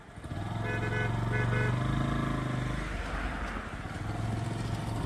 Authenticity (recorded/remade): recorded